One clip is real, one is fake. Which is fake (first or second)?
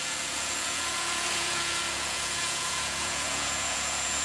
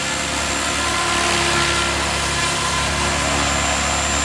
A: first